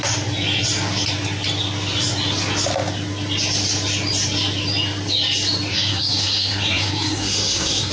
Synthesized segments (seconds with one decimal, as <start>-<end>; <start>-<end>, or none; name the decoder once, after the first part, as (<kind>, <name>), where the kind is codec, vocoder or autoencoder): 5.7-7.9 (codec, SNAC)